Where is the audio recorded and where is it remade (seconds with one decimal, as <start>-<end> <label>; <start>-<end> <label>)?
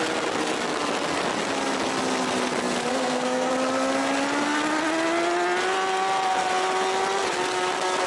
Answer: 0.0-2.9 recorded; 2.9-3.5 remade; 3.5-8.1 recorded